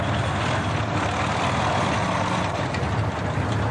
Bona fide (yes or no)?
yes